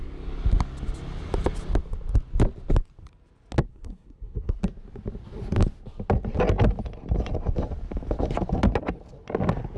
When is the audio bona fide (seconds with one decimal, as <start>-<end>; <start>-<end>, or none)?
0.0-3.7; 4.6-9.8